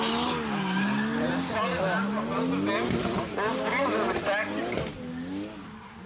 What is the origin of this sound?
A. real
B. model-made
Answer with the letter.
A